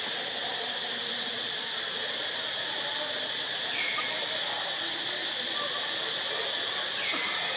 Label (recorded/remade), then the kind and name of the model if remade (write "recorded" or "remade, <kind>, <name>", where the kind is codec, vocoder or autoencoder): recorded